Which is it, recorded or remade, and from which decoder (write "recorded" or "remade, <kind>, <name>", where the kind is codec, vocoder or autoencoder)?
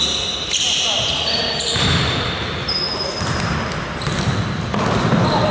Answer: remade, vocoder, BigVGAN v2